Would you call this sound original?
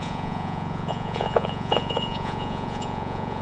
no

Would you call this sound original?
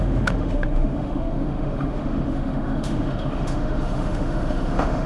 no